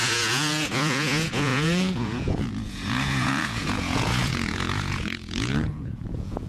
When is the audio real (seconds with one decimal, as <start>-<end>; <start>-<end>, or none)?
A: none